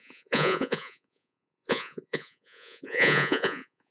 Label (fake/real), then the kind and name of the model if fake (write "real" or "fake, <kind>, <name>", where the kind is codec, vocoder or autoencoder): fake, vocoder, Vocos